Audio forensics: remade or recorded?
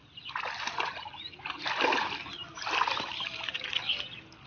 recorded